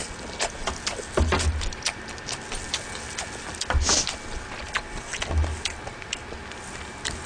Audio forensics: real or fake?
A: real